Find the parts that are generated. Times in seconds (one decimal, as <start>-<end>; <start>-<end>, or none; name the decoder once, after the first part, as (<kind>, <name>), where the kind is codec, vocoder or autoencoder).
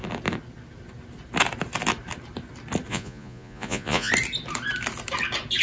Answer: 2.9-4.1 (vocoder, Vocos)